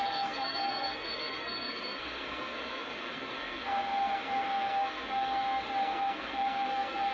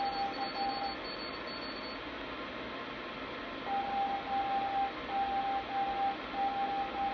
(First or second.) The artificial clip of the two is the first